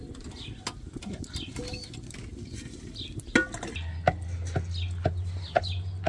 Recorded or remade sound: recorded